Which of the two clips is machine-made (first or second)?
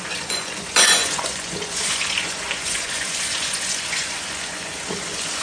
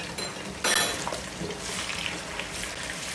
first